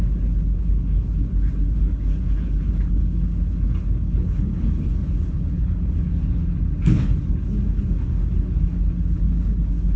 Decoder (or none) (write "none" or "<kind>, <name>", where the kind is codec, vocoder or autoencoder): codec, HILCodec